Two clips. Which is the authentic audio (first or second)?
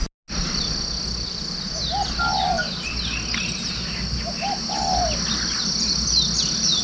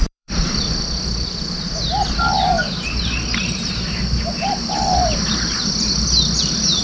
first